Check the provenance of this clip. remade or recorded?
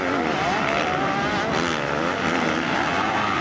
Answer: recorded